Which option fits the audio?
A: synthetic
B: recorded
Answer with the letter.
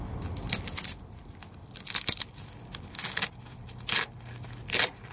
B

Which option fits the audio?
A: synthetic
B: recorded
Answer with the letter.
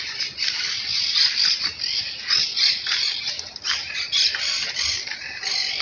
B